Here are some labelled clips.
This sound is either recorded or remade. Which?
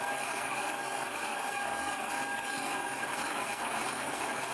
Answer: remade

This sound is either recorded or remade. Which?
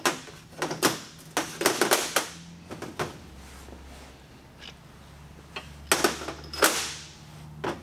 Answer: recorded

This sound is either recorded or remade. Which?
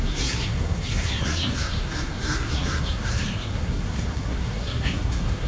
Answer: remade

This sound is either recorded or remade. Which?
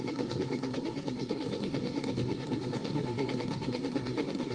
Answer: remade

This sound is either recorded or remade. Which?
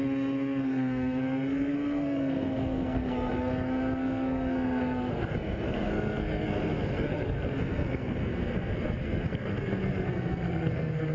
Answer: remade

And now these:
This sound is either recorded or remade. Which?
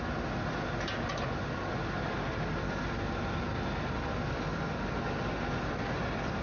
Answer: recorded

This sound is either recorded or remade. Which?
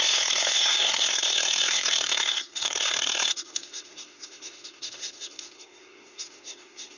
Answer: remade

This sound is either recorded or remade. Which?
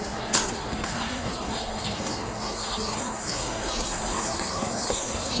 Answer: remade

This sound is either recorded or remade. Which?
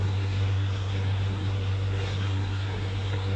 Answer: remade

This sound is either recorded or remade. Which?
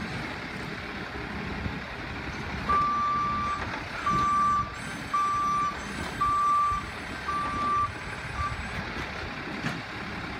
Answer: recorded